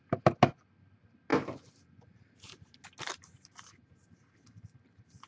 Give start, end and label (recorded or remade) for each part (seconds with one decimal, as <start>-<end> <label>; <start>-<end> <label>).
0.0-5.3 recorded